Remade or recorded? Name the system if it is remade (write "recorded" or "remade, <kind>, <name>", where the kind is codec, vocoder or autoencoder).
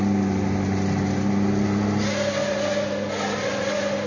recorded